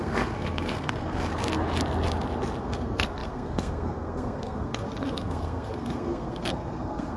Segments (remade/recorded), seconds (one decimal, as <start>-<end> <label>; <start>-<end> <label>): 0.0-1.3 remade; 1.3-2.6 recorded; 2.6-7.2 remade